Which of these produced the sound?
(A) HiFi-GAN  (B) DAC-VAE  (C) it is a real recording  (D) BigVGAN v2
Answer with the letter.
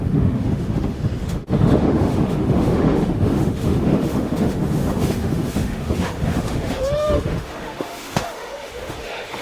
B